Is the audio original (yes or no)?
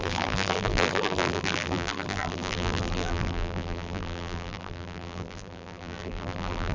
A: no